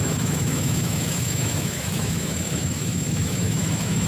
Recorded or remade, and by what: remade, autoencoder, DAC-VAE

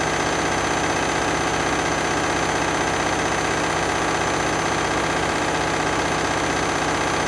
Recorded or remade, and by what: recorded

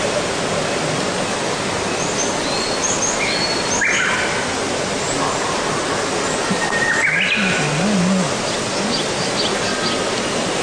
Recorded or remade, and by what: recorded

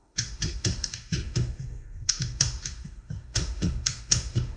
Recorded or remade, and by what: remade, autoencoder, DAC-VAE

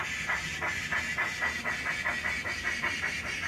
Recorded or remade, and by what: recorded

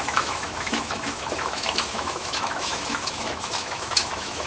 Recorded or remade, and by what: remade, autoencoder, DAC-VAE